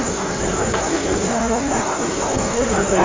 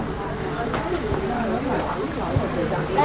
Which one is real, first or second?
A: second